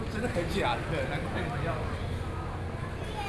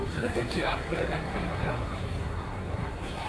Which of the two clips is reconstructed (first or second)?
second